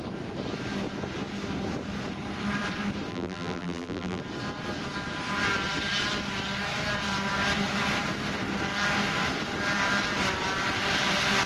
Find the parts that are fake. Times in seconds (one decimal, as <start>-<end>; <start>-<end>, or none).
3.1-4.2